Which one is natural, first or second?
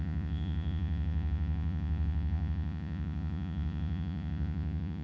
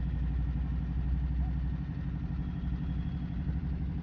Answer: second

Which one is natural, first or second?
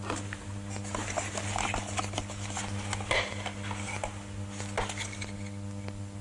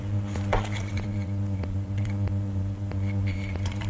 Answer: first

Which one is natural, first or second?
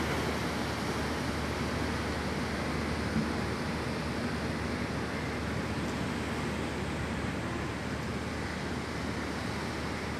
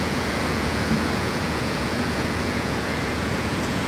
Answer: first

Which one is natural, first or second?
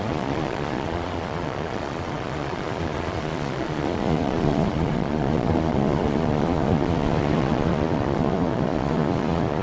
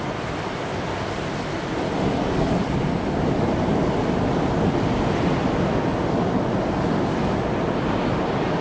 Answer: second